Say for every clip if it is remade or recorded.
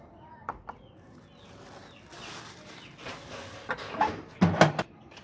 recorded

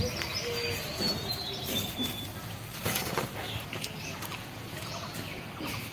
recorded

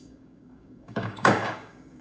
remade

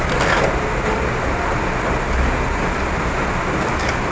recorded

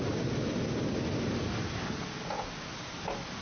recorded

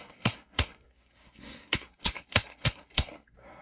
remade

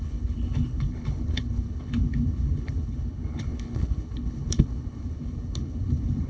remade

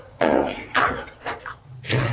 remade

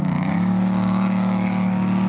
remade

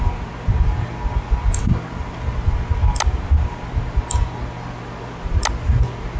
recorded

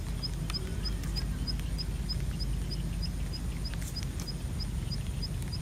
recorded